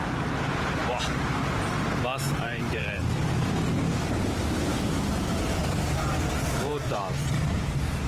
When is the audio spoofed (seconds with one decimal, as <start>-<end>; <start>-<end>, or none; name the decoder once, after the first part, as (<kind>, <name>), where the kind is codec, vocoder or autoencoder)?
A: 0.0-8.1 (vocoder, BigVGAN v2)

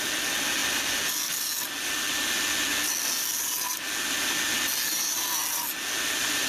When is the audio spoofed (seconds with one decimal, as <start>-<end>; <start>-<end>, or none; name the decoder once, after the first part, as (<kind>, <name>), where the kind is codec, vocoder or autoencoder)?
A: none

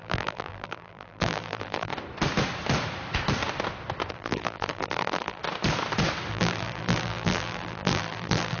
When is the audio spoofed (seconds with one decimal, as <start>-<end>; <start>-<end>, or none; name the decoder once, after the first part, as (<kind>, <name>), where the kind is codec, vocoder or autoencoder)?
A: 0.0-1.9 (vocoder, BigVGAN v2); 4.1-5.4; 6.3-8.6

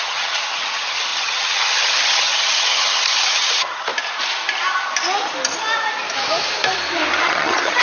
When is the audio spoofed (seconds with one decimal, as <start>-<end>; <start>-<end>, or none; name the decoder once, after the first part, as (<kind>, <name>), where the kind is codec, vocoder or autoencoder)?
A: 0.0-3.9 (vocoder, HiFi-GAN); 7.2-7.8